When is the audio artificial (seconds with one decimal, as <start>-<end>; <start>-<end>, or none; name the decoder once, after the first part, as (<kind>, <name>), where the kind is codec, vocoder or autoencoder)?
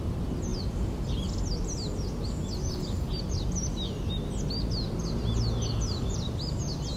none